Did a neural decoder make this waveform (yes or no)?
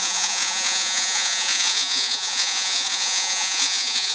yes